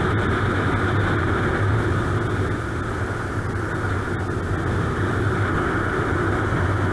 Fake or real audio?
real